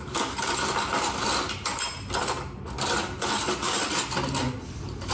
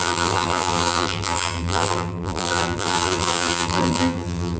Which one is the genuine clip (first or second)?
first